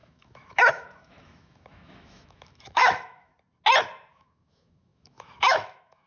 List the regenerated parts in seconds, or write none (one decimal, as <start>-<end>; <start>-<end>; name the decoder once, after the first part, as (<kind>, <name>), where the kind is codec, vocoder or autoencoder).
0.0-3.3 (autoencoder, DAC-VAE); 4.1-6.1